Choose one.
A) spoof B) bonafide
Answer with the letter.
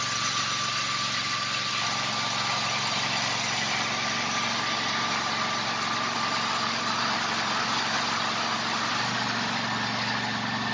B